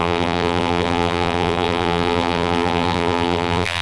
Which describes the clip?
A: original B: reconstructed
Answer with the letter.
B